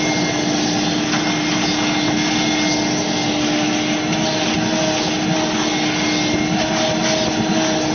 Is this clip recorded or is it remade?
recorded